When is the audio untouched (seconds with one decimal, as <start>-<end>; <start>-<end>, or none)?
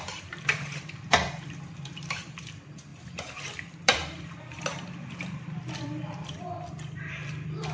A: none